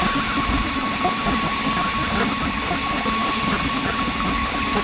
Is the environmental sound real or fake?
real